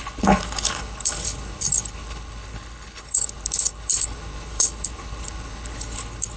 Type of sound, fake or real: fake